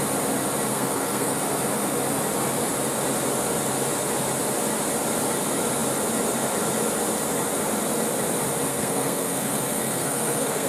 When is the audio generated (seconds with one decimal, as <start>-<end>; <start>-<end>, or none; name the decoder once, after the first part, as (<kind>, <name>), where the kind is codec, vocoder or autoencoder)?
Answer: 0.7-1.4 (codec, SNAC); 8.7-10.7